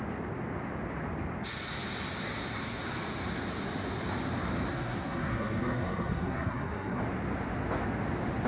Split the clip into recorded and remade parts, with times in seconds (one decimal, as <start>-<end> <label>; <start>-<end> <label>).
0.0-4.7 recorded; 4.7-7.0 remade; 7.0-8.5 recorded